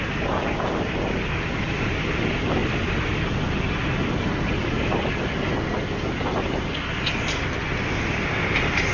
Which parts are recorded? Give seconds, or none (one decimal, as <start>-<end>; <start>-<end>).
0.0-8.9